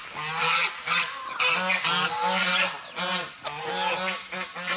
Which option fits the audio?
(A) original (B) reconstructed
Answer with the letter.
A